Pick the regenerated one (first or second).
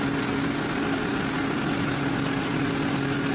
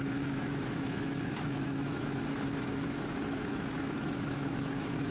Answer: second